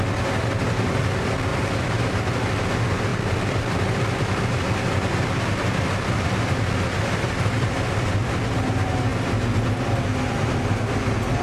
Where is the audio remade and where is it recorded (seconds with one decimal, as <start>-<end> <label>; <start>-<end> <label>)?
0.0-1.5 recorded; 1.5-2.6 remade; 2.6-3.1 recorded; 3.1-4.6 remade; 4.6-11.4 recorded